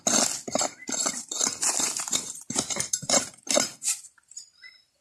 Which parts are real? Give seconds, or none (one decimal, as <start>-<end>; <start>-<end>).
0.0-1.0; 3.4-5.0